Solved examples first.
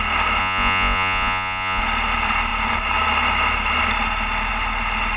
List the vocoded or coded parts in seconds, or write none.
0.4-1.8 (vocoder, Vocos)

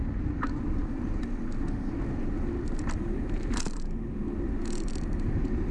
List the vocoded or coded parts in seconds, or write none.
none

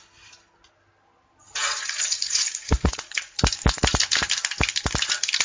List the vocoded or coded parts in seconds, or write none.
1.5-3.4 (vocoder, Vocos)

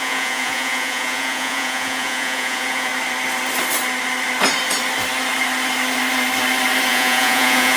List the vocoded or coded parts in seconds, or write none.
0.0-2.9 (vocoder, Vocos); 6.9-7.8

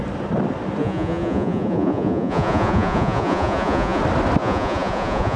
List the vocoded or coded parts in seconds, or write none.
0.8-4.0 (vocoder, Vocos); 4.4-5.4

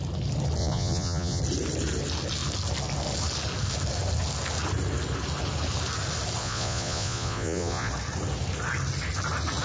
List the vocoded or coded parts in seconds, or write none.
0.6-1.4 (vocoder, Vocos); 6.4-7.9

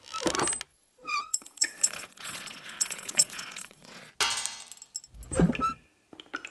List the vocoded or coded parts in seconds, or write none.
0.7-4.1 (vocoder, Vocos)